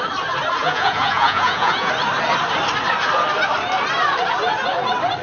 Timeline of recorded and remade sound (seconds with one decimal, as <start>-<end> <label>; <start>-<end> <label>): 0.0-0.6 recorded; 0.6-1.9 remade; 1.9-5.2 recorded